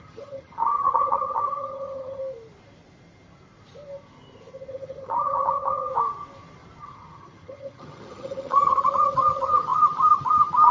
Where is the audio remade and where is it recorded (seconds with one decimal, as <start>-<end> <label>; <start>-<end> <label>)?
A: 0.0-2.2 remade; 2.2-4.7 recorded; 4.7-5.9 remade; 5.9-6.8 recorded; 6.8-10.7 remade

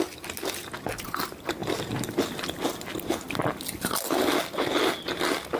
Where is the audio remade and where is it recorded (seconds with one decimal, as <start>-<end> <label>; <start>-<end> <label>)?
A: 0.0-5.6 recorded

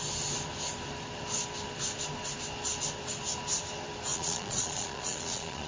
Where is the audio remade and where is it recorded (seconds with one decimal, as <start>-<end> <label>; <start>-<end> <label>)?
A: 0.0-4.1 recorded; 4.1-5.7 remade

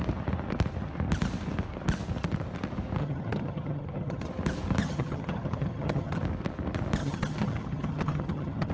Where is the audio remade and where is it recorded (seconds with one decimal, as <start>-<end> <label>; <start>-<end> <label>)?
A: 0.0-3.0 recorded; 3.0-4.3 remade; 4.3-4.8 recorded; 4.8-6.2 remade; 6.2-7.0 recorded; 7.0-8.7 remade

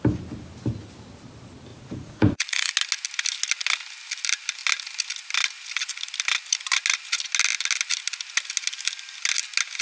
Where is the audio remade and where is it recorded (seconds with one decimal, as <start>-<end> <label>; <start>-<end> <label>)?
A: 0.0-1.7 recorded; 1.7-2.7 remade; 2.7-9.8 recorded

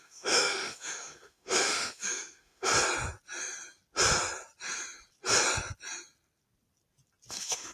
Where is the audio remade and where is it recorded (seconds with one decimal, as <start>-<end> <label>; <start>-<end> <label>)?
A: 0.0-2.7 remade; 2.7-7.3 recorded; 7.3-7.7 remade

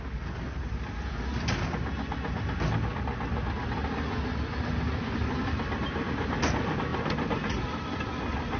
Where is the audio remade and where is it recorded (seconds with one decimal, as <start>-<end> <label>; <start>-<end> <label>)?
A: 0.0-8.6 recorded

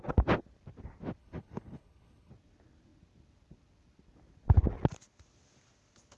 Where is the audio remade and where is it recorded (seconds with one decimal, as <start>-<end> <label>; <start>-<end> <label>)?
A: 0.0-1.2 recorded; 1.2-2.3 remade; 2.3-6.2 recorded